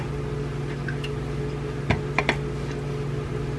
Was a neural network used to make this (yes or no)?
no